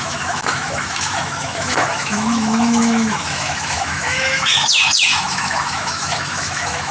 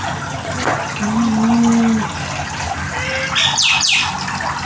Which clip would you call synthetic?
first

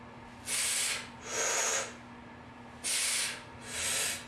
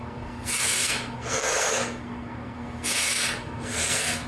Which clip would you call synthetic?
second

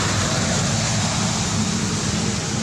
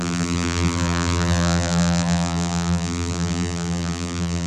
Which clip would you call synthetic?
second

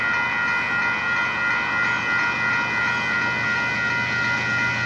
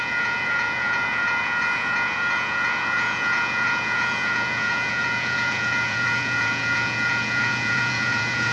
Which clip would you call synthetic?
second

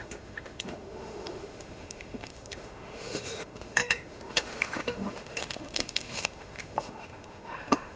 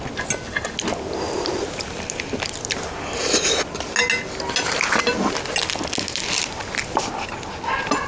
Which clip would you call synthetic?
first